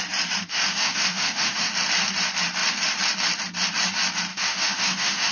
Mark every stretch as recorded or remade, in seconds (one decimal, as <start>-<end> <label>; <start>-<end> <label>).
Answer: 0.0-0.5 recorded; 0.5-1.7 remade; 1.7-4.3 recorded; 4.3-5.3 remade